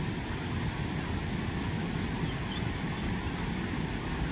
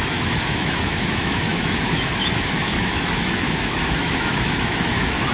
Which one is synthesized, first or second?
second